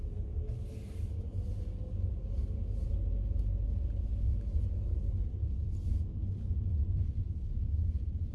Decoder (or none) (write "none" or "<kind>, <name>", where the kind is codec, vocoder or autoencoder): none